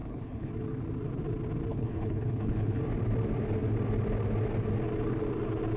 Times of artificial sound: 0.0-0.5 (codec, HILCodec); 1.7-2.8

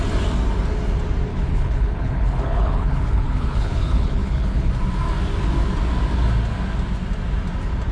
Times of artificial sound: 1.3-4.7 (codec, HILCodec)

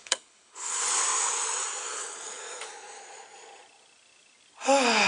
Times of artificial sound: 0.0-0.8 (codec, HILCodec); 1.8-2.6

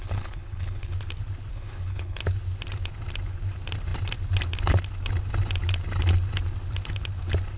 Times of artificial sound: 0.0-0.9 (codec, HILCodec); 1.5-2.2

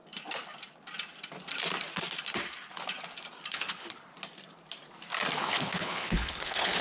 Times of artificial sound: 3.5-4.1 (codec, HILCodec); 5.4-6.8

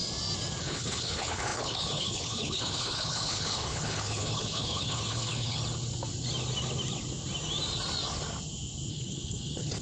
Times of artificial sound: 0.6-5.6 (codec, HILCodec); 8.9-9.8